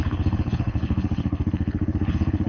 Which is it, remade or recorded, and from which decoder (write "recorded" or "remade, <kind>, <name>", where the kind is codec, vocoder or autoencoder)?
remade, codec, HILCodec